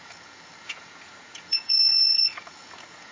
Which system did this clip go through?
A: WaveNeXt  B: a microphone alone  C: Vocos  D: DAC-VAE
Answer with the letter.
C